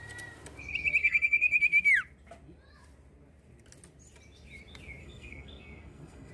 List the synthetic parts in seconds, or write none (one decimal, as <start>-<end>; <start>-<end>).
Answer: 1.0-1.6; 5.0-6.3